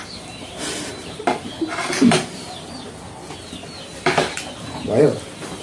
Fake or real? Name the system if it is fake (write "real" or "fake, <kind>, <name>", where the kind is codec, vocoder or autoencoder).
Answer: real